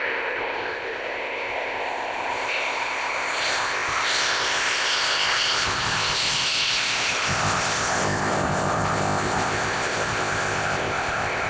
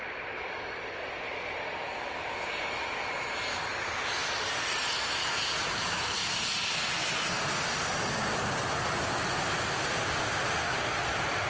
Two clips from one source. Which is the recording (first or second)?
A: second